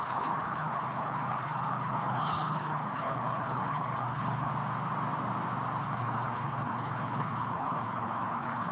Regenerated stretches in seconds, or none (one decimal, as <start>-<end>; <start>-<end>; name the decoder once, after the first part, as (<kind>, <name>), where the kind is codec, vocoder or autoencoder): 0.0-4.5 (codec, HILCodec); 5.8-8.7